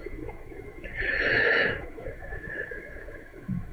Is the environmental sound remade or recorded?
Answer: remade